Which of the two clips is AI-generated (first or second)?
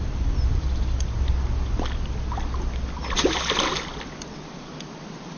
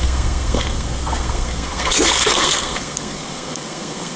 second